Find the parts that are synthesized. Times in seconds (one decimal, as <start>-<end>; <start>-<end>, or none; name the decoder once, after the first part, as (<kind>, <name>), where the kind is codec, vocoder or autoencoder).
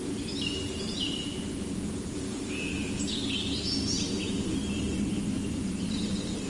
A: 0.9-3.2 (vocoder, Vocos)